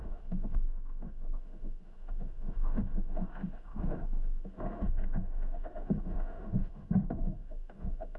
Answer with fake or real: fake